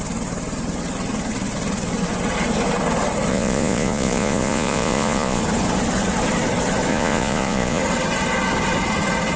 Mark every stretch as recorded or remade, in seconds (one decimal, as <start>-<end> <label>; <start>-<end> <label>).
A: 0.0-3.3 recorded; 3.3-5.4 remade; 5.4-6.9 recorded; 6.9-7.8 remade; 7.8-9.4 recorded

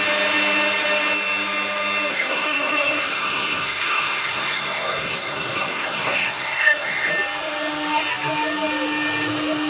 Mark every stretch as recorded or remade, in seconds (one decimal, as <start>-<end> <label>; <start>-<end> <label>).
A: 0.0-2.1 recorded; 2.1-7.1 remade; 7.1-9.7 recorded

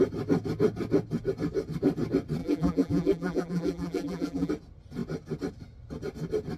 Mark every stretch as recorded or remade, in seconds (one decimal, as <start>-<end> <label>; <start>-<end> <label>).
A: 0.0-2.4 recorded; 2.4-4.5 remade; 4.5-6.6 recorded

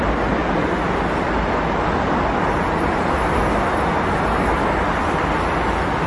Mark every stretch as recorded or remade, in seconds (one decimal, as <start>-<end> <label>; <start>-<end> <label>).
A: 0.0-6.1 recorded

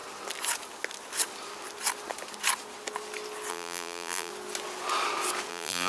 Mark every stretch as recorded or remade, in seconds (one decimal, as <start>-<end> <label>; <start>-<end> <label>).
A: 0.0-3.5 recorded; 3.5-4.3 remade; 4.3-5.5 recorded; 5.5-5.9 remade